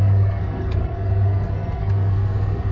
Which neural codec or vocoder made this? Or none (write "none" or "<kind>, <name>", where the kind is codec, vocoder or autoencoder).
codec, SNAC